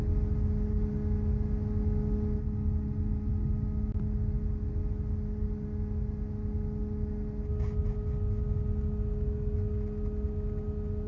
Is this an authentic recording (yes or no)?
yes